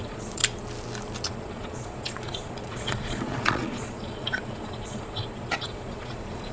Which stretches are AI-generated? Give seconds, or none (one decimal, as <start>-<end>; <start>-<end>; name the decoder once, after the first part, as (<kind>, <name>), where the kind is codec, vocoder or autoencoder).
0.0-0.4 (vocoder, Vocos); 1.3-6.5